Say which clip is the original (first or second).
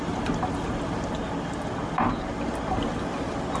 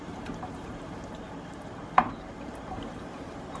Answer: first